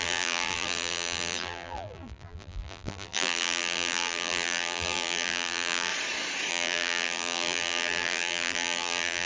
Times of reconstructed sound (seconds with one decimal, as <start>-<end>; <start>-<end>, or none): 0.0-5.9; 6.5-9.3